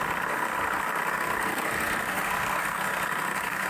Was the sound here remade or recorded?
remade